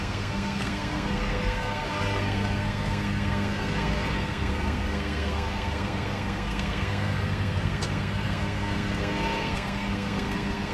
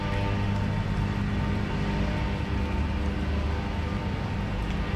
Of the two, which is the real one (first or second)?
second